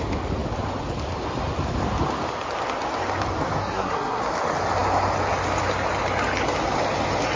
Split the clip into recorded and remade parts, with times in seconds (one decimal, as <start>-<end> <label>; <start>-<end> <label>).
0.0-3.6 recorded; 3.6-4.2 remade; 4.2-7.4 recorded